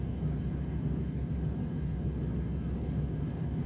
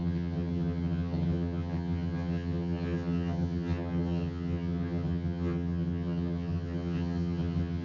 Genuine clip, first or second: first